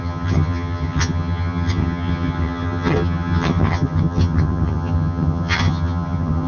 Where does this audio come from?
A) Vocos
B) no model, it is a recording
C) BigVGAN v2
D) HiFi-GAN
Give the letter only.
D